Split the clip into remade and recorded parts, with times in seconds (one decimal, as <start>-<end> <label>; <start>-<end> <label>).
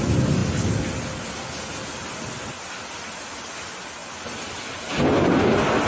0.0-5.9 recorded